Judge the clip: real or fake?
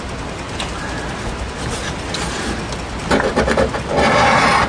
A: real